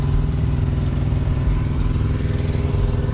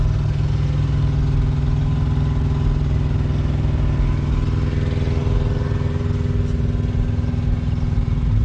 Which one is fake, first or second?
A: first